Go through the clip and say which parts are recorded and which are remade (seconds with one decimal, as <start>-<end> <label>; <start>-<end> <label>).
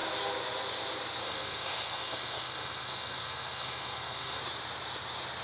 0.0-1.2 recorded; 1.2-4.4 remade; 4.4-5.4 recorded